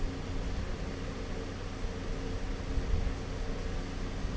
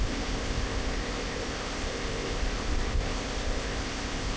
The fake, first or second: second